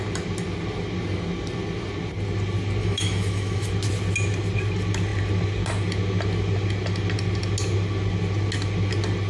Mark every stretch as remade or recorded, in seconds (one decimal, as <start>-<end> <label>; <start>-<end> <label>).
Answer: 0.0-2.8 recorded; 2.8-3.7 remade; 3.7-9.3 recorded